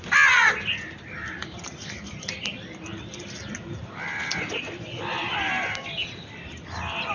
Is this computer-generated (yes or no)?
no